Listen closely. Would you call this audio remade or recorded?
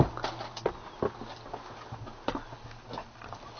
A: recorded